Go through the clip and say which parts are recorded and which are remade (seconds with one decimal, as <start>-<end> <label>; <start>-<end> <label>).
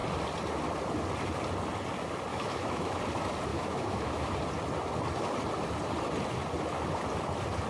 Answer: 0.0-2.3 recorded; 2.3-3.0 remade; 3.0-3.5 recorded; 3.5-4.3 remade; 4.3-7.7 recorded